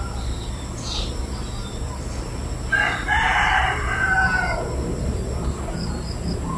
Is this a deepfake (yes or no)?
yes